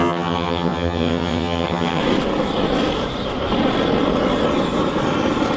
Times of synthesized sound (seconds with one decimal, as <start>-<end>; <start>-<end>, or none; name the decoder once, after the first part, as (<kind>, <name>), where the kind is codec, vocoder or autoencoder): 0.0-2.0 (vocoder, HiFi-GAN)